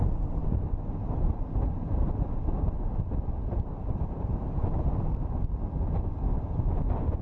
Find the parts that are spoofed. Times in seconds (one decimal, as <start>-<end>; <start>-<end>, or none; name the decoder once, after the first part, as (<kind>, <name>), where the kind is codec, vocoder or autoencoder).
none